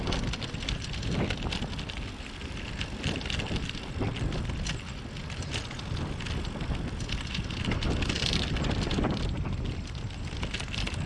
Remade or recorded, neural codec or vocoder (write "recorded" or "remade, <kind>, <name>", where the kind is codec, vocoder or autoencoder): recorded